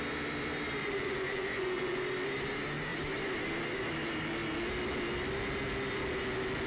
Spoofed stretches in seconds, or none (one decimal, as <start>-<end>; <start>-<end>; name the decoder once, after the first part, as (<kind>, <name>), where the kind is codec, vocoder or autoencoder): 0.8-2.0 (vocoder, Vocos)